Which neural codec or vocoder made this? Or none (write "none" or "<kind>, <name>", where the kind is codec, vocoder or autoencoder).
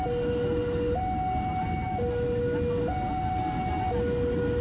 none